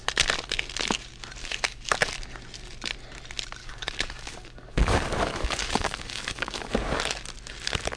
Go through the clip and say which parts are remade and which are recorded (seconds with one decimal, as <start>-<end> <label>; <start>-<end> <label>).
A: 0.0-1.4 recorded; 1.4-2.1 remade; 2.1-3.6 recorded; 3.6-7.0 remade; 7.0-8.0 recorded